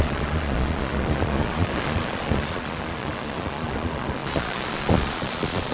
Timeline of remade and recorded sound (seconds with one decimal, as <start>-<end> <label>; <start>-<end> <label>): 0.0-5.7 remade